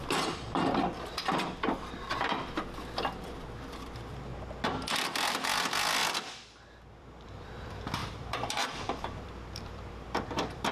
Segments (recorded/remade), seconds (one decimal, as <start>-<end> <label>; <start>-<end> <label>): 0.0-4.3 remade; 4.3-5.3 recorded; 5.3-6.0 remade; 6.0-6.7 recorded; 6.7-10.7 remade

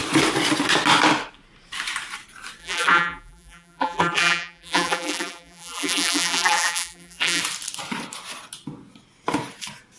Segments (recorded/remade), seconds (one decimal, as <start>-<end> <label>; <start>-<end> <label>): 0.0-2.6 recorded; 2.6-7.4 remade; 7.4-10.0 recorded

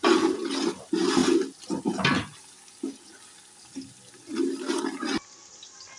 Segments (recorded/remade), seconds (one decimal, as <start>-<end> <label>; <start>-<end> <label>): 0.0-6.0 recorded

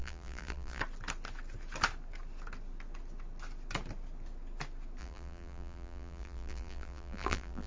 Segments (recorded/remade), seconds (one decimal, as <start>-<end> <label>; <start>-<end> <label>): 0.0-0.8 remade; 0.8-5.0 recorded; 5.0-7.7 remade

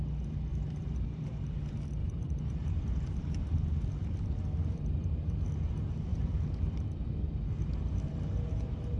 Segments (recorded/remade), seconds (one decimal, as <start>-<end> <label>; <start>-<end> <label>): 0.0-0.5 recorded; 0.5-1.6 remade; 1.6-2.0 recorded; 2.0-3.6 remade; 3.6-6.1 recorded; 6.1-6.7 remade; 6.7-9.0 recorded

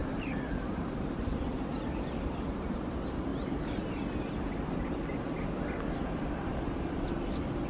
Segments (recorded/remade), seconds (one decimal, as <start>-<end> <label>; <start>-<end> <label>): 0.0-1.2 remade; 1.2-3.3 recorded; 3.3-3.9 remade; 3.9-7.7 recorded

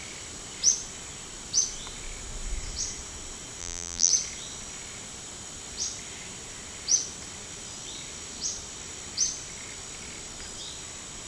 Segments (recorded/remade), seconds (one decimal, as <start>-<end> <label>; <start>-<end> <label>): 0.0-3.6 recorded; 3.6-4.1 remade; 4.1-11.3 recorded